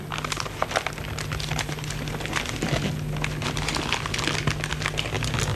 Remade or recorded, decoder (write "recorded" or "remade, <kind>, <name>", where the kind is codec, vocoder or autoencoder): recorded